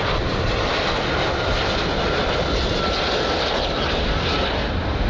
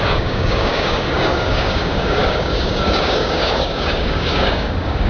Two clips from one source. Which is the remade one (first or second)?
second